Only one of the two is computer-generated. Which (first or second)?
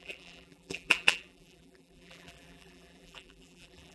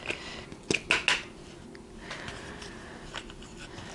first